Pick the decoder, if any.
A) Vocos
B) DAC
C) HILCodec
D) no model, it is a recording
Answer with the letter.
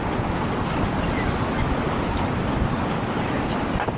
D